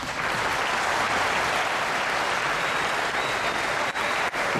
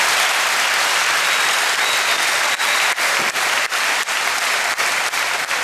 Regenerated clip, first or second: second